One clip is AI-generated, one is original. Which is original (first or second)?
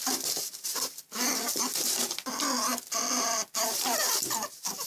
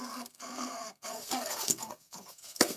first